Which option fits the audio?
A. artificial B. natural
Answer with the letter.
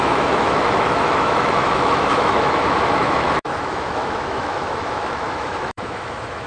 A